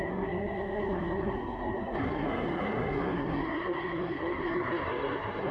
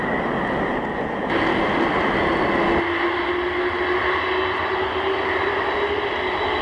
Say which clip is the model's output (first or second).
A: first